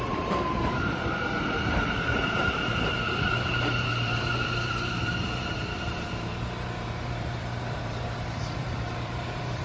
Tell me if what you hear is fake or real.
fake